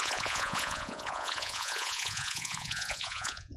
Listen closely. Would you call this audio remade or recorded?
remade